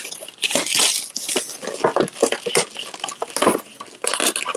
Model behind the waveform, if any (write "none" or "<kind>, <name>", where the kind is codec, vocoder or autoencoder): none